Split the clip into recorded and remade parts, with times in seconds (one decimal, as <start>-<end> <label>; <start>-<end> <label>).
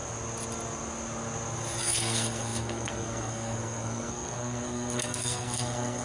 0.0-1.8 recorded; 1.8-6.0 remade